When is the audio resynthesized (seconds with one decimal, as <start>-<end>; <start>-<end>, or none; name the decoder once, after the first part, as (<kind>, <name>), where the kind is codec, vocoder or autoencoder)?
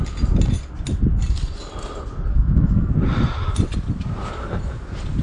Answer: 2.3-2.9 (codec, SNAC)